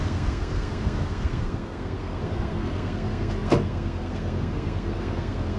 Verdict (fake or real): fake